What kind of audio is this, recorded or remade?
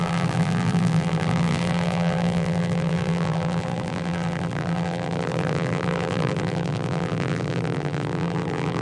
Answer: remade